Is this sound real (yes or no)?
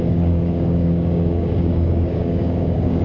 no